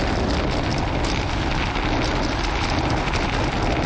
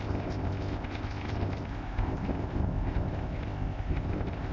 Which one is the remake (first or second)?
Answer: second